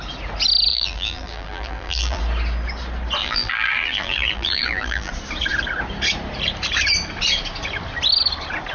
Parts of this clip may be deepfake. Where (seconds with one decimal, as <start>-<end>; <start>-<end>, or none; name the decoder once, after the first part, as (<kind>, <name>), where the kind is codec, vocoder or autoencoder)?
0.7-2.2 (vocoder, BigVGAN v2); 3.2-5.1